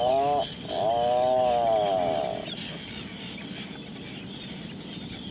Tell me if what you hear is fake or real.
real